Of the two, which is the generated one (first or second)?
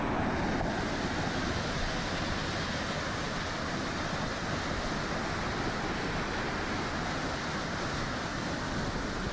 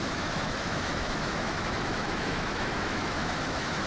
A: second